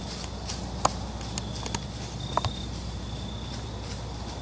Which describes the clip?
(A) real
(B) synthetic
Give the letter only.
A